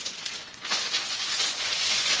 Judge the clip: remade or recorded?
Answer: remade